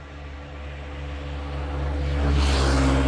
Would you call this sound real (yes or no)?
yes